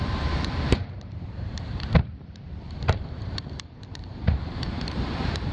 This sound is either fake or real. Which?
fake